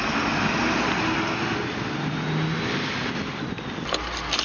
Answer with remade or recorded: recorded